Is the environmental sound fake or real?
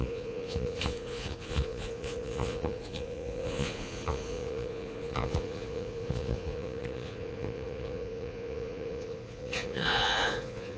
fake